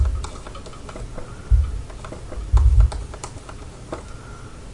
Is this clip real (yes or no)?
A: yes